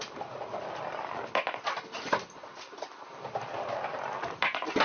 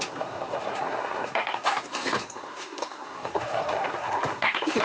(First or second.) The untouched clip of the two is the first